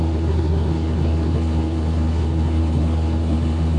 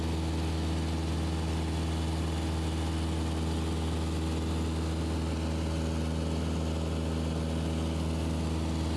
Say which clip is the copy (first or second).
first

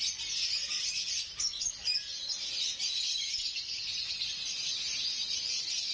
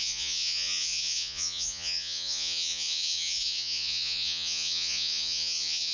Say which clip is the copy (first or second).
second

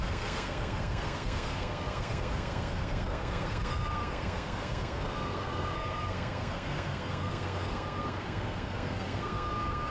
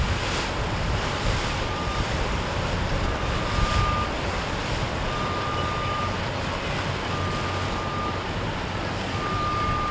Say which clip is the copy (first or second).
first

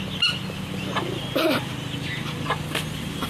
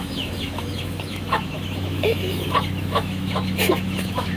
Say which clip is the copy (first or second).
second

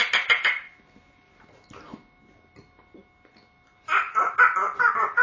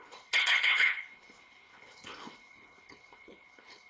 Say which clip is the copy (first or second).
second